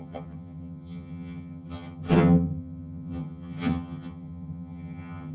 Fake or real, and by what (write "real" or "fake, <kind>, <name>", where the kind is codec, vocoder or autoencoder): fake, vocoder, HiFi-GAN